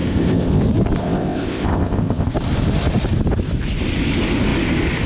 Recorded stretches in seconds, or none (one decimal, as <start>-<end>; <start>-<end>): 0.6-1.0; 2.3-5.1